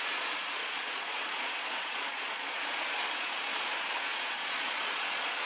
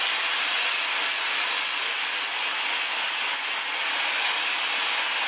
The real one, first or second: second